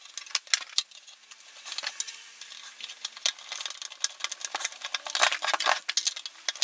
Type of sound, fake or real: real